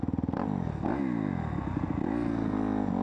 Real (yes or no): yes